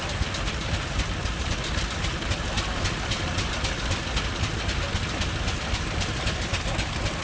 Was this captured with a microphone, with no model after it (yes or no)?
yes